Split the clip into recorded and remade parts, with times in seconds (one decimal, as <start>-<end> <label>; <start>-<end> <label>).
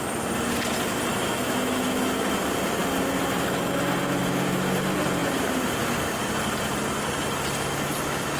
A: 0.0-1.1 recorded; 1.1-2.4 remade; 2.4-8.4 recorded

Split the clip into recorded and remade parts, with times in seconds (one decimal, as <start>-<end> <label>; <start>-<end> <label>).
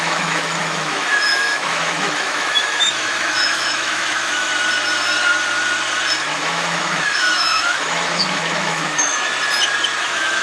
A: 0.0-4.5 remade; 4.5-6.3 recorded; 6.3-9.3 remade; 9.3-10.0 recorded; 10.0-10.4 remade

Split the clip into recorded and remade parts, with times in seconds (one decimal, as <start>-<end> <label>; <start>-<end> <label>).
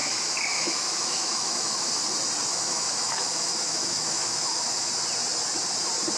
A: 0.0-1.9 remade; 1.9-2.5 recorded; 2.5-4.9 remade; 4.9-6.2 recorded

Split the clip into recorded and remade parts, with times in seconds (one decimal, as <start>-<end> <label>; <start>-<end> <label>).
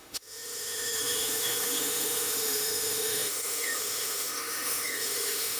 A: 0.0-5.6 remade